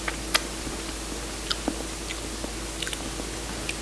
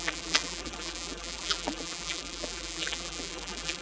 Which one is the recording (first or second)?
first